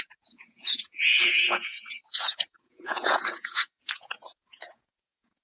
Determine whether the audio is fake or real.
fake